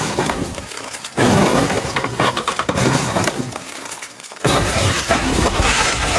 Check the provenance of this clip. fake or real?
fake